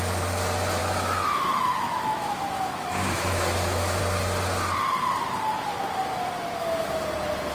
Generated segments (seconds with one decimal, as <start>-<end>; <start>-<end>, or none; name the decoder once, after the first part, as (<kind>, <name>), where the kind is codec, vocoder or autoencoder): 0.8-4.0 (autoencoder, DAC-VAE)